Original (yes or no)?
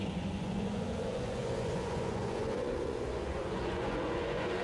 no